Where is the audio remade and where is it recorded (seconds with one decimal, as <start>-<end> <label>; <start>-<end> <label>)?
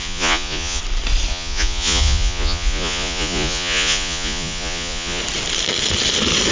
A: 0.0-0.8 remade; 0.8-1.3 recorded; 1.3-5.2 remade; 5.2-6.5 recorded